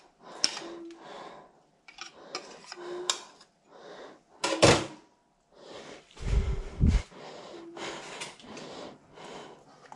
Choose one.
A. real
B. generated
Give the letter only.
A